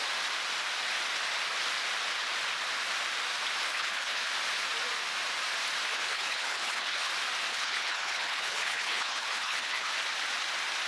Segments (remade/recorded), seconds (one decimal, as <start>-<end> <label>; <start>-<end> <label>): 0.0-3.7 recorded; 3.7-4.3 remade; 4.3-5.9 recorded; 5.9-7.1 remade; 7.1-7.5 recorded; 7.5-9.9 remade; 9.9-10.9 recorded